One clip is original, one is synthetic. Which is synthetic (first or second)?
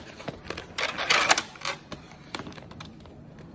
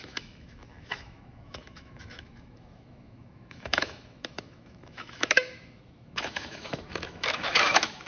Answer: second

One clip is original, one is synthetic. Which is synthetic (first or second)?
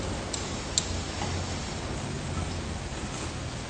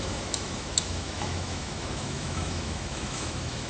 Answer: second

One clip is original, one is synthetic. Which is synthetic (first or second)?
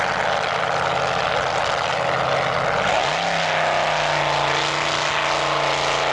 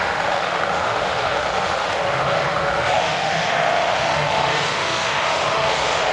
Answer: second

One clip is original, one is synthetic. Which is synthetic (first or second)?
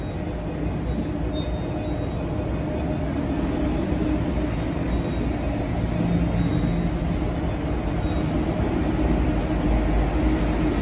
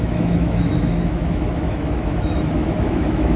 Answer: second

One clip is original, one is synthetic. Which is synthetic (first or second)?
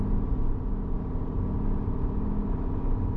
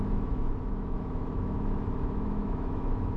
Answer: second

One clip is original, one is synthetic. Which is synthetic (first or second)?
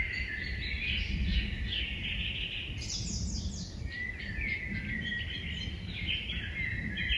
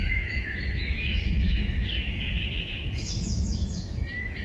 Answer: second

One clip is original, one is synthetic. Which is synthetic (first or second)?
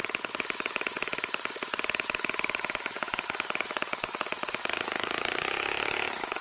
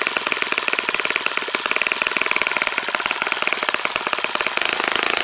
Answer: first